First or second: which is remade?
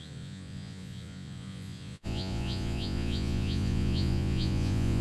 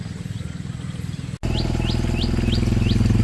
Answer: first